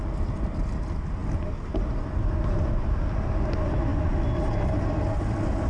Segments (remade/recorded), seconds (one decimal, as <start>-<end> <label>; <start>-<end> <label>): 0.0-5.7 recorded